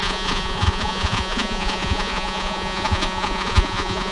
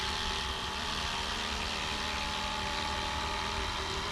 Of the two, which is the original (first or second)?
second